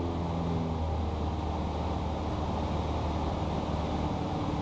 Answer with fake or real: real